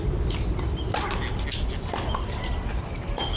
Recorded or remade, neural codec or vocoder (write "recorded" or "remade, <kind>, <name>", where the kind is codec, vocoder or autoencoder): recorded